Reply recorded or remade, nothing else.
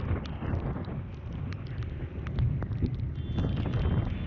recorded